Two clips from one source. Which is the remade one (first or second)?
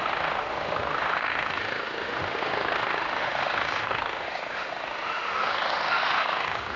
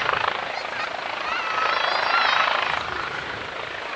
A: first